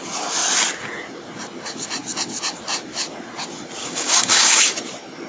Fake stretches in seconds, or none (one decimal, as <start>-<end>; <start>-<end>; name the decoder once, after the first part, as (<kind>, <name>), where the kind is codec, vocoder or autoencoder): 3.8-4.7 (codec, DAC)